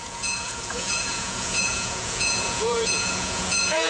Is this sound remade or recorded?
remade